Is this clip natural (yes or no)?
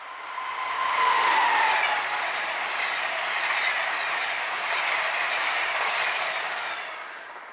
yes